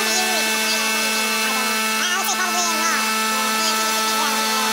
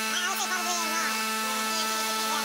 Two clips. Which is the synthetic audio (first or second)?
second